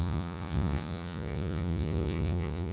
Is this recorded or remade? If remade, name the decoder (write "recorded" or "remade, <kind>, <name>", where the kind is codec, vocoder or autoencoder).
remade, vocoder, Vocos